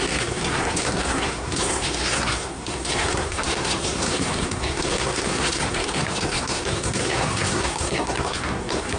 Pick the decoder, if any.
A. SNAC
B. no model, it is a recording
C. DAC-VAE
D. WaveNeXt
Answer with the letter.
A